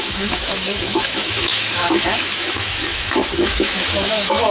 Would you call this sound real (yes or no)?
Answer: no